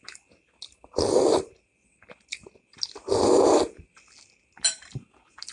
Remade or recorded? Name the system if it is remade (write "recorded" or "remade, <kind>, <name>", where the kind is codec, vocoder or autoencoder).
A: recorded